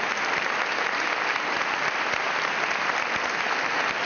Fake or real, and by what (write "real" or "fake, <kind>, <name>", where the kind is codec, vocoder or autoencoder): real